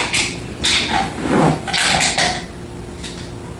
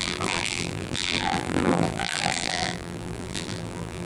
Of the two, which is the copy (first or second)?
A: second